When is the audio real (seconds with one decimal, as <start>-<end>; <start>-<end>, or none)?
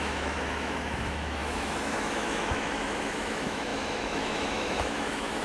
none